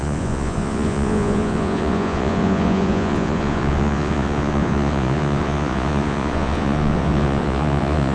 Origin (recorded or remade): remade